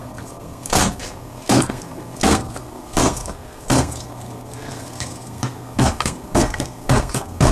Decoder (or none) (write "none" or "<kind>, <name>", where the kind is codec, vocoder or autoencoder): codec, SNAC